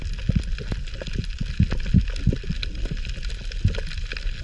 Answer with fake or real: real